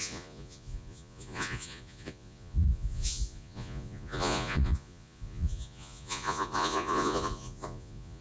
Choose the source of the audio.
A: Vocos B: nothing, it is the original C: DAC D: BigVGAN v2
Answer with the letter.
A